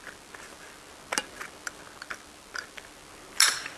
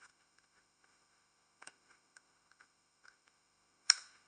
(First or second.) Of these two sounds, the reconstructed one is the second